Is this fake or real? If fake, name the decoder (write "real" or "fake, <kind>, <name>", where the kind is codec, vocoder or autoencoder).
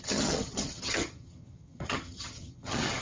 fake, vocoder, HiFi-GAN